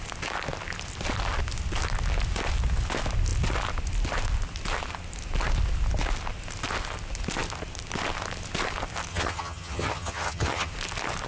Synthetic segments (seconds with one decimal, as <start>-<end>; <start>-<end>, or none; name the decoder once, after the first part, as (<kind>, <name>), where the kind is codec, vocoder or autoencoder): 9.1-10.7 (vocoder, HiFi-GAN)